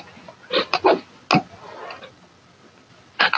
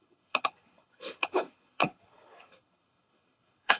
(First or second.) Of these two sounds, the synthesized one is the second